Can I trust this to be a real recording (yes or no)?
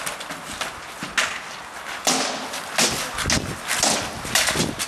yes